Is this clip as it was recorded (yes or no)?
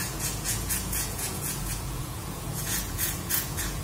no